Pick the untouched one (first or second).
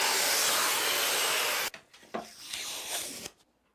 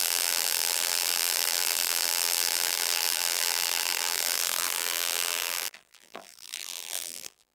first